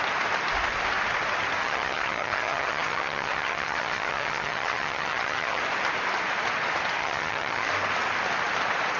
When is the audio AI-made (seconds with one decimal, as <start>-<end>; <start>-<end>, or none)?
1.6-5.6; 7.0-7.7